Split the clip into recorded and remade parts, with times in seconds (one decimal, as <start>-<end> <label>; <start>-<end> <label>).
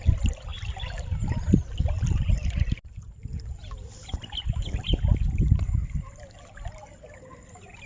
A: 0.0-7.9 recorded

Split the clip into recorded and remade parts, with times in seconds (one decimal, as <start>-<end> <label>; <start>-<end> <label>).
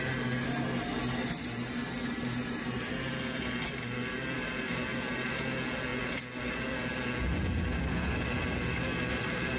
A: 0.0-9.6 recorded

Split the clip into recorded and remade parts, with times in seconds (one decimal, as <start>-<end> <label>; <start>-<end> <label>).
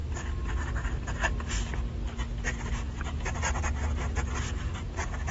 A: 0.0-3.2 recorded; 3.2-5.3 remade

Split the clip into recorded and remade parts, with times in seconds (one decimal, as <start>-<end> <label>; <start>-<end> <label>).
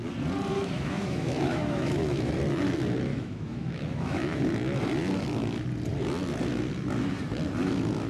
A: 0.0-0.5 recorded; 0.5-2.3 remade; 2.3-3.1 recorded; 3.1-4.5 remade; 4.5-8.1 recorded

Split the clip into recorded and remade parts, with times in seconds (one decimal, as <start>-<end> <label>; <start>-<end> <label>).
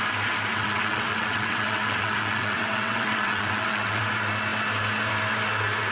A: 0.0-0.5 recorded; 0.5-4.0 remade; 4.0-5.9 recorded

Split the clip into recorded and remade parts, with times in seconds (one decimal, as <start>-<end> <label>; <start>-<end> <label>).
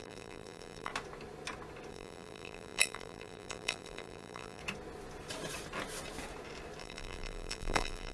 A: 0.0-0.9 remade; 0.9-1.9 recorded; 1.9-4.6 remade; 4.6-6.8 recorded; 6.8-8.1 remade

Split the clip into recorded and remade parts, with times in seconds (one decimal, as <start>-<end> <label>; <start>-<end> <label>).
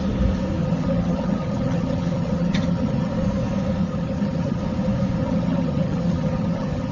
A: 0.0-0.6 recorded; 0.6-3.1 remade; 3.1-3.8 recorded; 3.8-4.6 remade; 4.6-5.2 recorded; 5.2-6.9 remade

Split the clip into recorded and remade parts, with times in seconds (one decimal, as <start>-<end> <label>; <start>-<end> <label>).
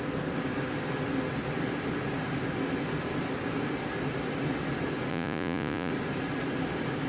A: 0.0-5.1 recorded; 5.1-5.9 remade; 5.9-7.1 recorded